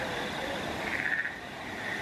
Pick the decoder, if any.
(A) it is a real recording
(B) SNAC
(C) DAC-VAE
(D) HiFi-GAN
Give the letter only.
A